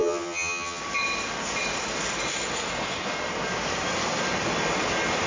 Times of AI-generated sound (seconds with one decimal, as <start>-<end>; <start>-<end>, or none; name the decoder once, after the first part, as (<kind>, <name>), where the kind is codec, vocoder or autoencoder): 0.0-0.8 (vocoder, HiFi-GAN)